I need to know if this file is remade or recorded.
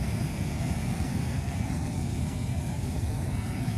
remade